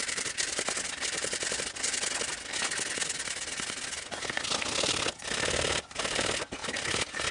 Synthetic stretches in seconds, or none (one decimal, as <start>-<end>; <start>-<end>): 0.0-2.3; 4.9-6.6